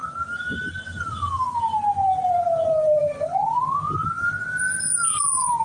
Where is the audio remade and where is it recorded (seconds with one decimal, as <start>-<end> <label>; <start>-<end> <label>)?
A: 0.0-5.6 recorded